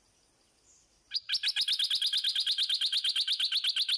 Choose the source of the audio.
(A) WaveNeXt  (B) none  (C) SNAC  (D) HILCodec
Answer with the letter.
B